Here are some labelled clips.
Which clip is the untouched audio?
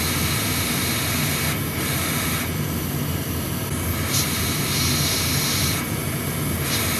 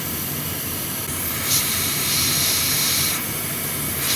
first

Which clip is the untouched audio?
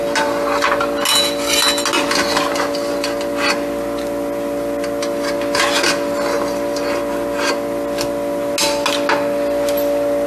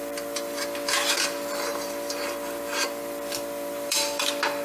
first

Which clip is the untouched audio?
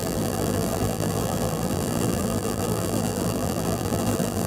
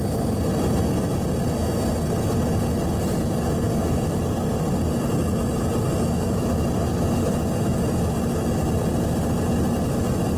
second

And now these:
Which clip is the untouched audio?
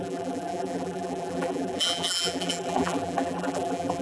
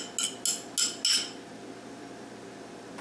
second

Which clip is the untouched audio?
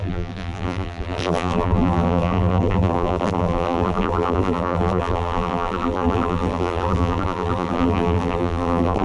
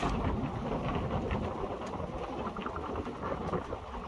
second